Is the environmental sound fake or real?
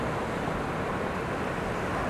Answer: real